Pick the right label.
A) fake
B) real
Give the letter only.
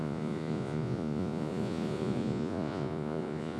A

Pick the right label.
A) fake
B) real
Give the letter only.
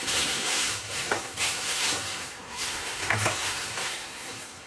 A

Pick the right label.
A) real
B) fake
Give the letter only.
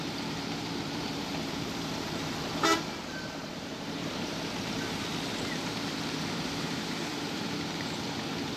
B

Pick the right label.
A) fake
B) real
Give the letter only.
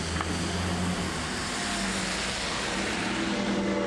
B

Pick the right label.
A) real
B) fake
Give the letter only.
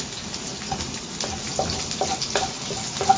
A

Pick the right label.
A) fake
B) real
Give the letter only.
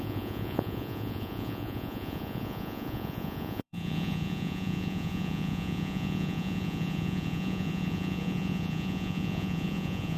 A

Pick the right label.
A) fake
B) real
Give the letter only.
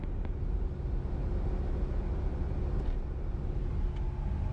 B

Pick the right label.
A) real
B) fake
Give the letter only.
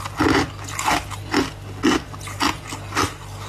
A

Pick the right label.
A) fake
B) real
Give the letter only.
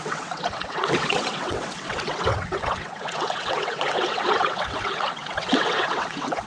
A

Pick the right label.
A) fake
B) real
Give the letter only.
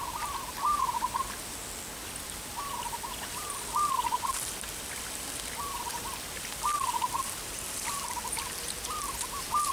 B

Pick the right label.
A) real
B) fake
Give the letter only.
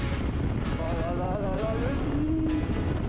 A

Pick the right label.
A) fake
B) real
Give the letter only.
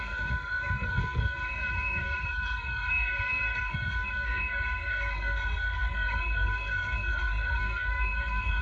A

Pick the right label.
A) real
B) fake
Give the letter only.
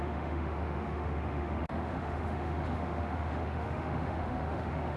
B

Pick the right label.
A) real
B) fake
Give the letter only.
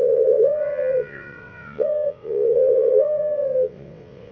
B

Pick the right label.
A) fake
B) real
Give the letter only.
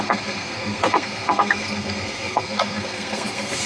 A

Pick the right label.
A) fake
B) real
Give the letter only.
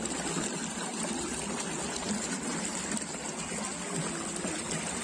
B